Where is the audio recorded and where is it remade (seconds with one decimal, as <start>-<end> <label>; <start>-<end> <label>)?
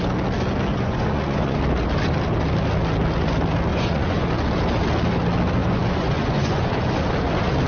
0.0-0.7 recorded; 0.7-1.6 remade; 1.6-3.7 recorded; 3.7-4.3 remade; 4.3-5.6 recorded; 5.6-6.9 remade; 6.9-7.7 recorded